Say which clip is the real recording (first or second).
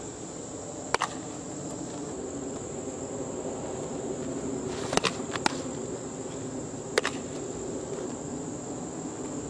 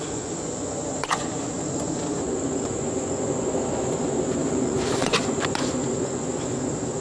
first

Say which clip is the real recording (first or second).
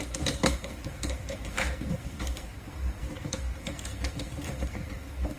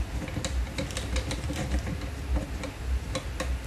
second